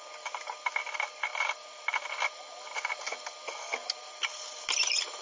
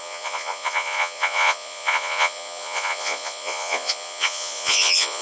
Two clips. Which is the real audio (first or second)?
first